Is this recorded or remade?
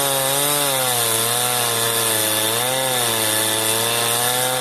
recorded